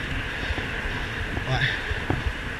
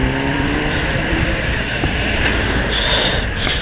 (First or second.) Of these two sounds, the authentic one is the first